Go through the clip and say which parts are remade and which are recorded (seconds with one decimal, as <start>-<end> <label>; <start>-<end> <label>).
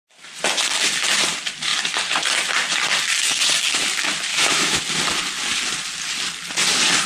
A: 0.0-4.3 recorded; 4.3-4.8 remade; 4.8-7.1 recorded